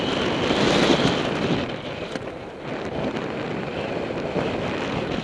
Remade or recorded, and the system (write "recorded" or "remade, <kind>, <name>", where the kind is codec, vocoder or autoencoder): recorded